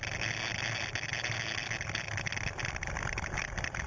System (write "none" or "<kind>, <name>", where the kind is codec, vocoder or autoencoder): none